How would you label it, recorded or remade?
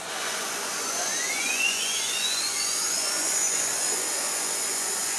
remade